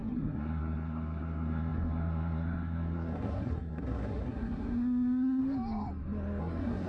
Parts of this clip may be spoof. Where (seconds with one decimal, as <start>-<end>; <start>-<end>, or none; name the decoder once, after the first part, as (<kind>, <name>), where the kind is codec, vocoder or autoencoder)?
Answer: 0.0-5.4 (codec, SNAC); 6.4-6.9

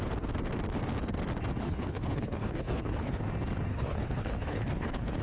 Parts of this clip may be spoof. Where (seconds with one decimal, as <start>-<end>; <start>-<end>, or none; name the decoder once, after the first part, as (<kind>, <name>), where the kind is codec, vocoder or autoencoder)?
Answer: 1.6-3.2 (codec, HILCodec); 3.7-5.2

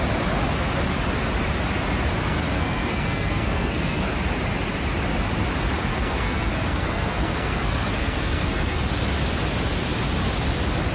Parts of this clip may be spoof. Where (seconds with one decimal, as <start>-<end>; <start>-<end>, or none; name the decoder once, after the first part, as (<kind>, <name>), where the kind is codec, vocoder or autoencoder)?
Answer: 2.2-4.1 (codec, SNAC); 5.9-8.9